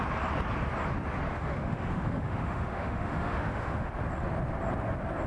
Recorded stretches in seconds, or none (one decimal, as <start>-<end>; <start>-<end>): 0.0-1.3; 3.9-5.3